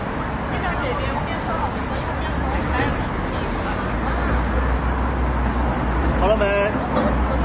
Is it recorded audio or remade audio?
recorded